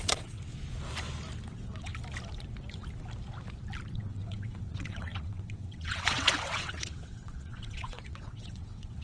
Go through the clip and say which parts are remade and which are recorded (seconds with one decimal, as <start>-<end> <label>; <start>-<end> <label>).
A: 0.0-0.4 remade; 0.4-1.5 recorded; 1.5-1.9 remade; 1.9-3.9 recorded; 3.9-9.0 remade